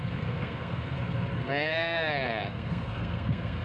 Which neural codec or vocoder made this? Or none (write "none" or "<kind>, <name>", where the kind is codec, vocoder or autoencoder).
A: codec, SNAC